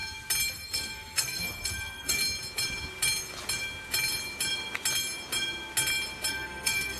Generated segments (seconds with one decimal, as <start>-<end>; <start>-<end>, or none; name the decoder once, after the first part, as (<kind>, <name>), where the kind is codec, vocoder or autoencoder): 0.5-2.2 (codec, SNAC); 6.3-7.0